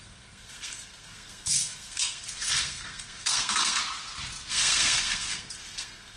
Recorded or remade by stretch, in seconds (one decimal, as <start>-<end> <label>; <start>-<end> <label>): 0.0-3.8 remade; 3.8-4.5 recorded; 4.5-6.2 remade